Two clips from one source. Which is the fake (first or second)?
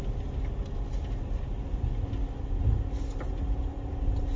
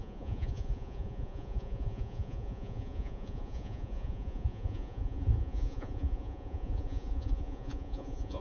second